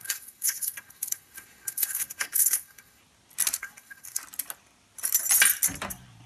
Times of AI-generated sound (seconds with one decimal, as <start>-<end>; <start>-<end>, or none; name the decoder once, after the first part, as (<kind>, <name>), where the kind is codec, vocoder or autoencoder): 0.0-3.0 (codec, SNAC); 3.6-4.2